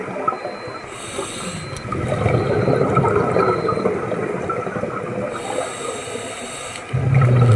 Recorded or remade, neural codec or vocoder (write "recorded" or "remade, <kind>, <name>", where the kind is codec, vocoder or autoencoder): recorded